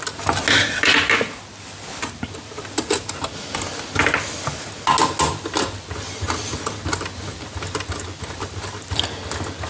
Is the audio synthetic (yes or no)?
no